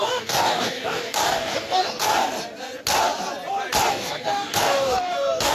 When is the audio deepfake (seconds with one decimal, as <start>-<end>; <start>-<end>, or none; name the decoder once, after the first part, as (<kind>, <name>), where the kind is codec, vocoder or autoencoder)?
0.0-2.1 (codec, DAC); 3.9-5.5